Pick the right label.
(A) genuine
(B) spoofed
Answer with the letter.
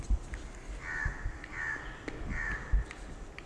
A